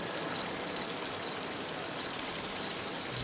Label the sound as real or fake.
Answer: real